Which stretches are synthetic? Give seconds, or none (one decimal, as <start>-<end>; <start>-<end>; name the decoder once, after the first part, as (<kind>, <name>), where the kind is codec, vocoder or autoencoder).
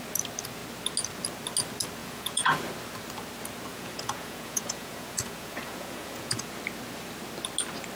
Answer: 2.0-2.6 (vocoder, Vocos); 3.7-6.5